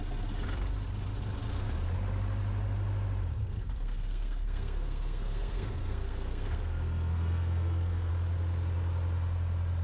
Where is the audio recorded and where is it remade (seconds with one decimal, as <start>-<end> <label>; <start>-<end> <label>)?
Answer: 0.0-3.4 recorded; 3.4-8.1 remade; 8.1-9.8 recorded